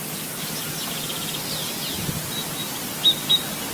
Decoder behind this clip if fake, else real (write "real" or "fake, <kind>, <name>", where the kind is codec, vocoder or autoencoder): real